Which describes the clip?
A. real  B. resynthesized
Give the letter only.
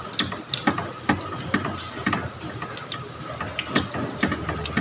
A